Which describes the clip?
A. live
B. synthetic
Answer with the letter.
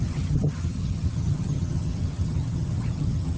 B